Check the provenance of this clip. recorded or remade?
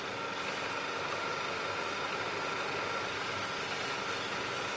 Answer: recorded